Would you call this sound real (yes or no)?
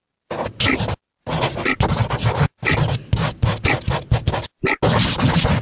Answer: yes